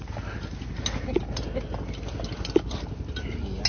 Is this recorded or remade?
recorded